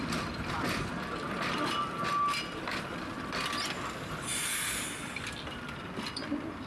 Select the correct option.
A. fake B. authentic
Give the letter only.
B